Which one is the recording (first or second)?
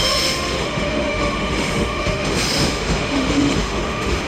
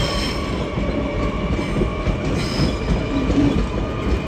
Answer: second